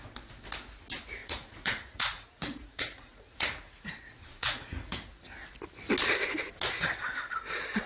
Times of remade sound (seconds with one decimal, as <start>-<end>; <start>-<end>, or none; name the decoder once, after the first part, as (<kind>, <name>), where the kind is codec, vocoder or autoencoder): 1.2-3.9 (vocoder, Vocos); 4.3-5.1